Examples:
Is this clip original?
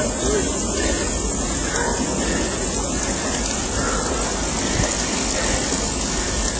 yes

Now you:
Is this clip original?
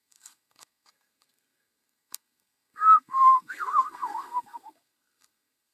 no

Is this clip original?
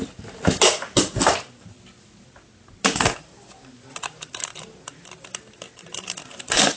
yes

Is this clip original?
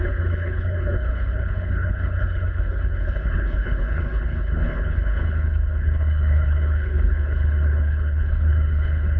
no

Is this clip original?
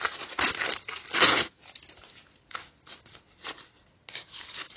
yes